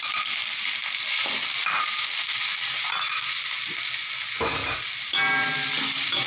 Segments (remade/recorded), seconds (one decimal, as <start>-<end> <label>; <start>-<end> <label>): 0.0-6.3 recorded